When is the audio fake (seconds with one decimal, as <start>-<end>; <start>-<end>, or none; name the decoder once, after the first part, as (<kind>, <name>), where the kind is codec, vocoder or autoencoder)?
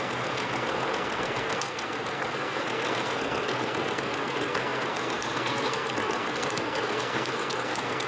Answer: 0.0-8.1 (codec, SNAC)